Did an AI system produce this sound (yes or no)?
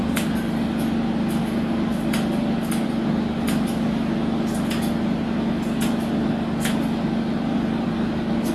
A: no